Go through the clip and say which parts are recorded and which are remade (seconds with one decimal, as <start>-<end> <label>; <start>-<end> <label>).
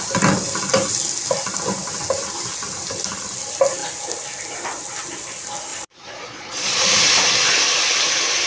0.0-5.7 recorded; 5.7-6.8 remade; 6.8-8.5 recorded